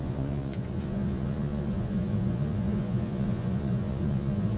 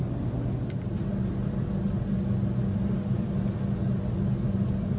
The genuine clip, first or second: second